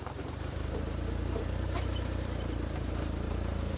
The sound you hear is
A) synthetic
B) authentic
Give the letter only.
A